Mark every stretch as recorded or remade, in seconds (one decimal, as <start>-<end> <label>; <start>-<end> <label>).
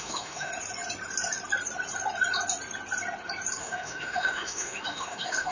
0.0-0.5 remade; 0.5-3.6 recorded; 3.6-5.5 remade